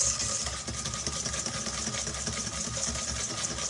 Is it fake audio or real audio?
real